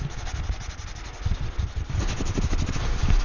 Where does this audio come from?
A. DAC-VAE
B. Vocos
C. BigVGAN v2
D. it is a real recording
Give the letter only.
D